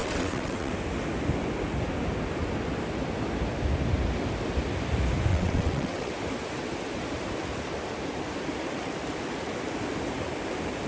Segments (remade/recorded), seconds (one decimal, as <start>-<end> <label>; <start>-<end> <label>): 0.0-0.7 remade; 0.7-5.3 recorded; 5.3-6.1 remade; 6.1-10.9 recorded